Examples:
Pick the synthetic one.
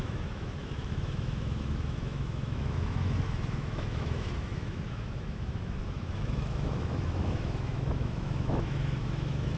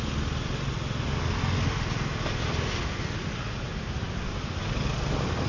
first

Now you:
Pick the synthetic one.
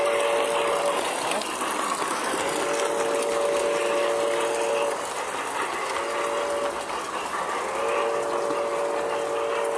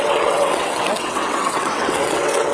second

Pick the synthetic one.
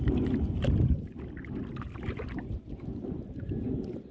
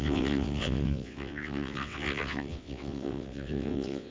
second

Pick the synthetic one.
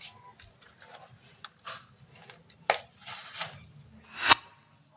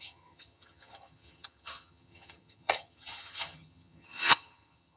second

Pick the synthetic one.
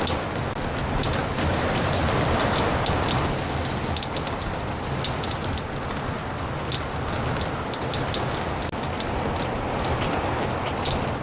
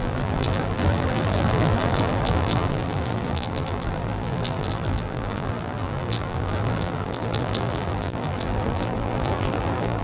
second